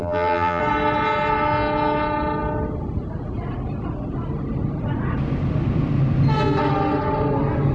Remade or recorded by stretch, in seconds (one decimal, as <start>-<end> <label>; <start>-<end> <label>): 0.0-0.6 remade; 0.6-7.7 recorded